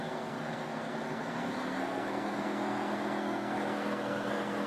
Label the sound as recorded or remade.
remade